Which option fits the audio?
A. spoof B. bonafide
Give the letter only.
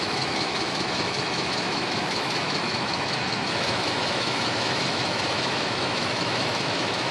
A